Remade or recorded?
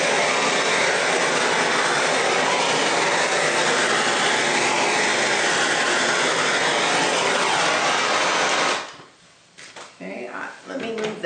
recorded